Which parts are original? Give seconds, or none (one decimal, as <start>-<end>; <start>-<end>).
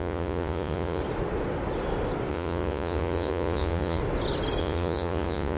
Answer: 1.0-2.3; 4.0-4.6